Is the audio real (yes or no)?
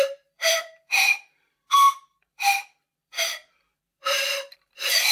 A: no